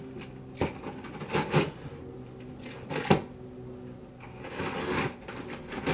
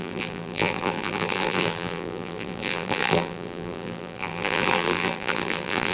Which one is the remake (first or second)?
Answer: second